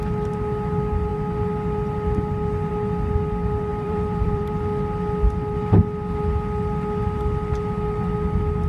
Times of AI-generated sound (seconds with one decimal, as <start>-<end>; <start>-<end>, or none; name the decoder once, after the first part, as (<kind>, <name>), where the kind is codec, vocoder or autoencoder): 3.7-4.5 (vocoder, BigVGAN v2)